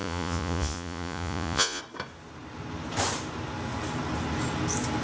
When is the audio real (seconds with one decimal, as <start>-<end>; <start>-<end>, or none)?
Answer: 1.8-5.0